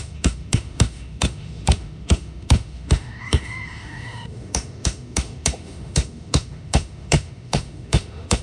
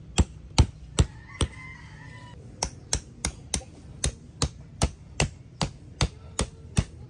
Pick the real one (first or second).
second